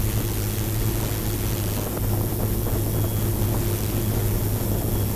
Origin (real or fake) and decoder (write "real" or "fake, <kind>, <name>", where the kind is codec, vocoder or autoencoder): real